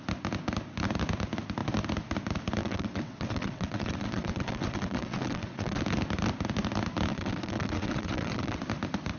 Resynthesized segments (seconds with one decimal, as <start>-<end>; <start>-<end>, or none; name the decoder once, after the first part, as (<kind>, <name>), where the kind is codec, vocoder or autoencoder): 2.6-5.8 (vocoder, WaveNeXt); 7.1-8.6